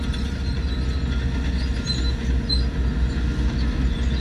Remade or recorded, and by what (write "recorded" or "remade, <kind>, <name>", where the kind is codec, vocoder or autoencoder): recorded